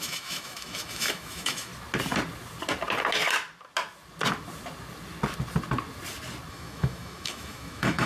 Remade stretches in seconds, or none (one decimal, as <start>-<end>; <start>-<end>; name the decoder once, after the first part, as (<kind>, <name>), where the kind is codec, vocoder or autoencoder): 0.0-1.7 (autoencoder, DAC-VAE); 6.5-8.1